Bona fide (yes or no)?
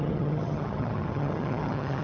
no